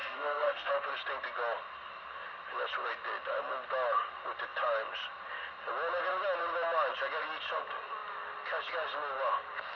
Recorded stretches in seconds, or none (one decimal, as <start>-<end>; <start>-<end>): 0.7-9.8